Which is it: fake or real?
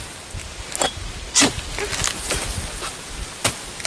real